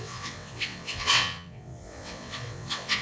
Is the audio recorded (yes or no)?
no